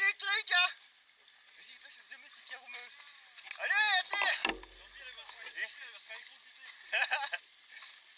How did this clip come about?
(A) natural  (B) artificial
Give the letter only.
A